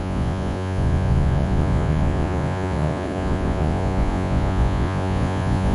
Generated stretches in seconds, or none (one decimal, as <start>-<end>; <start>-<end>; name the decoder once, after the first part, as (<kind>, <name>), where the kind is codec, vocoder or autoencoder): 0.0-5.7 (vocoder, Vocos)

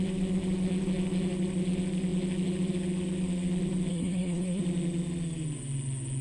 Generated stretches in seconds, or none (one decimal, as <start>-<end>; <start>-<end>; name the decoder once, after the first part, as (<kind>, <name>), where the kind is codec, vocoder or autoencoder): 3.9-4.6 (codec, SNAC)

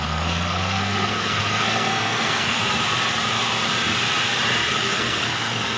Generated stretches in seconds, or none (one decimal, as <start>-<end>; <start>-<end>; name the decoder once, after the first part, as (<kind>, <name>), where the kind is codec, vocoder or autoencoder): 0.0-2.6 (codec, SNAC); 4.7-5.8

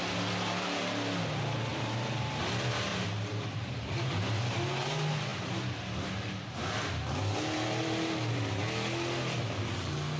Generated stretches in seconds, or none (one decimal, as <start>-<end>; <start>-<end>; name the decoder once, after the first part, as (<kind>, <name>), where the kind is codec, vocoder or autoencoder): 1.7-2.4 (vocoder, BigVGAN v2); 2.9-4.1

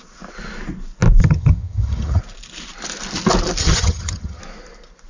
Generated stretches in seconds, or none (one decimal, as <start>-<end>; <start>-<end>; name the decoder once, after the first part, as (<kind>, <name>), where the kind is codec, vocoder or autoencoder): 1.2-2.2 (vocoder, HiFi-GAN); 3.6-4.4

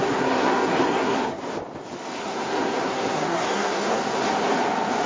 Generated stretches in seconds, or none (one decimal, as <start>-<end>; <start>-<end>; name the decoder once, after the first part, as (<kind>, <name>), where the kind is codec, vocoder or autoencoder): 0.0-1.4 (codec, SNAC); 2.2-4.0

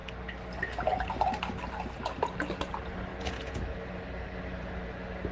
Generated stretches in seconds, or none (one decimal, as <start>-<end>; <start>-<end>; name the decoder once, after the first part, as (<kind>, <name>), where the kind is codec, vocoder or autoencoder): 3.1-3.6 (vocoder, Vocos)